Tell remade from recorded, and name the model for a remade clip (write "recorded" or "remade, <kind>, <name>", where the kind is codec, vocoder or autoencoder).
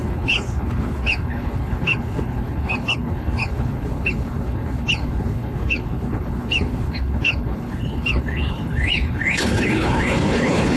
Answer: remade, codec, HILCodec